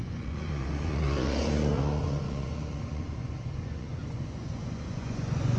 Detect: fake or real fake